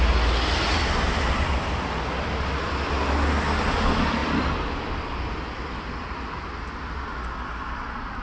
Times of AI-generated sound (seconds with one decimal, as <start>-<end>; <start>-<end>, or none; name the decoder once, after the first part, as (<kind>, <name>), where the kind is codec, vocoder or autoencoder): none